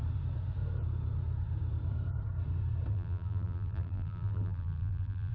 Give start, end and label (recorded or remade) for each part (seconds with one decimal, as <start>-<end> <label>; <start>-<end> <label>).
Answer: 0.0-2.9 recorded; 2.9-5.3 remade